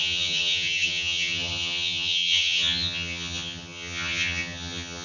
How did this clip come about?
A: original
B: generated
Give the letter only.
B